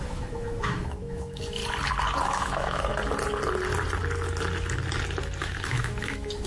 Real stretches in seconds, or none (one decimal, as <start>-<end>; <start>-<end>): 1.6-2.2; 2.9-5.4